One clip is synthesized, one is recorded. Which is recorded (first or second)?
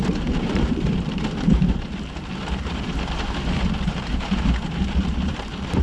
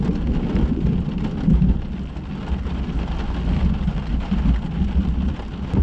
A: second